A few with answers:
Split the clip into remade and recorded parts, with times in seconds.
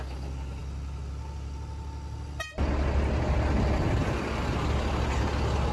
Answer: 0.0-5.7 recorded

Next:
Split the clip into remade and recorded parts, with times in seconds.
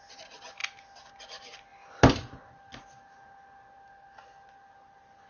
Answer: 0.0-5.3 recorded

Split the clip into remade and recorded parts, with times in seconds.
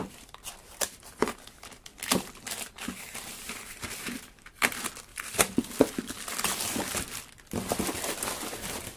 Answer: 0.0-1.9 remade; 1.9-3.7 recorded; 3.7-9.0 remade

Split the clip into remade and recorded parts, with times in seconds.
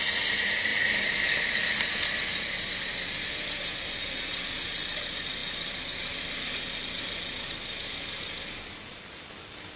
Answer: 0.0-9.8 recorded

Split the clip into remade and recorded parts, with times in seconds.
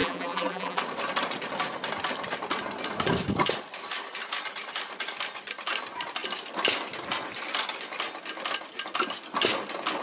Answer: 0.0-0.8 remade; 0.8-10.0 recorded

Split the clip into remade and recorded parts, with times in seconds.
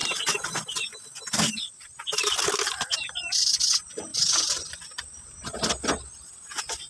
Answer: 0.0-6.9 recorded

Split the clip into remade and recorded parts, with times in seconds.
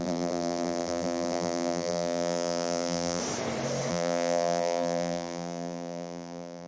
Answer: 0.0-3.2 remade; 3.2-3.9 recorded; 3.9-6.7 remade